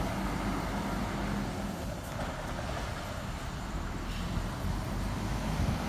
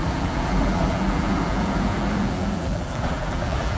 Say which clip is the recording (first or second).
first